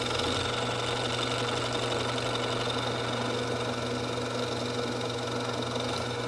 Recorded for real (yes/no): yes